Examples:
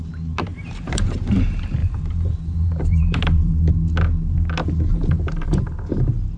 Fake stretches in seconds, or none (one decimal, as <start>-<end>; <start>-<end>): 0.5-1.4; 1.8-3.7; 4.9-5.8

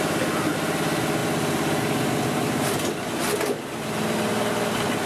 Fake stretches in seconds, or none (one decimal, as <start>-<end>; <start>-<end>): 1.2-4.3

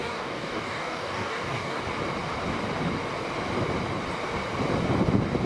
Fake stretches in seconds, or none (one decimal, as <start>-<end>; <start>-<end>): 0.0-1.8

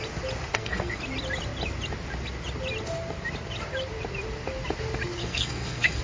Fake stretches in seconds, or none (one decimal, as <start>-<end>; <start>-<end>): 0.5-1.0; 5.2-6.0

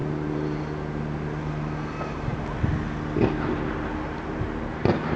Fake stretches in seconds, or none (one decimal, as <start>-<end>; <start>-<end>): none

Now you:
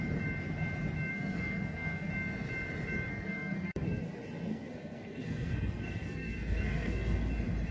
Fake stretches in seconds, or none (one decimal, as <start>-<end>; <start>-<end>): 1.1-2.1; 3.1-4.0; 4.5-7.3